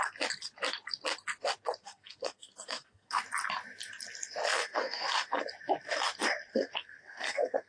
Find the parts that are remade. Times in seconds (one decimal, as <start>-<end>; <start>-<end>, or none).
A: 1.8-3.2; 4.5-5.4; 6.5-7.7